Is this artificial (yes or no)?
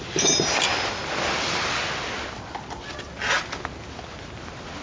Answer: no